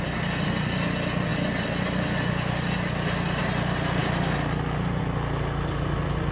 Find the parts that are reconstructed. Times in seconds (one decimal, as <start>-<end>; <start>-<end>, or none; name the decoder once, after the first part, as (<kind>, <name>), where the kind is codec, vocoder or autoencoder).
none